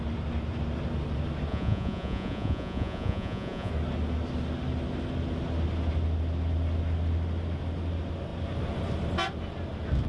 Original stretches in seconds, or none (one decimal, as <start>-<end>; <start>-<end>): 0.0-1.5; 3.7-10.1